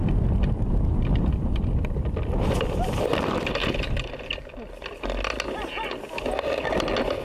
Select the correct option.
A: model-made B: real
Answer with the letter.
B